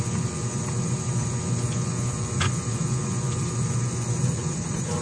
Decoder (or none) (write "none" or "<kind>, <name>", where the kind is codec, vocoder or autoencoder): vocoder, Vocos